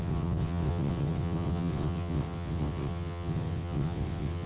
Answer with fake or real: fake